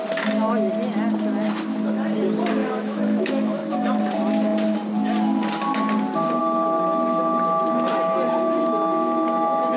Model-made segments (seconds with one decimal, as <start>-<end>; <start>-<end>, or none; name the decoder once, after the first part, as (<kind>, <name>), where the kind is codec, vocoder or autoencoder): 2.6-4.0 (autoencoder, DAC-VAE)